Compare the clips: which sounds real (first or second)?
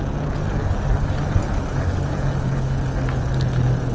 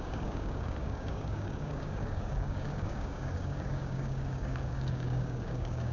first